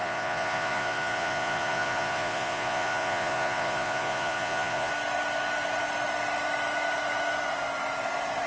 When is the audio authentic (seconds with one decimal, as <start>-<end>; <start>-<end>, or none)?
4.9-8.5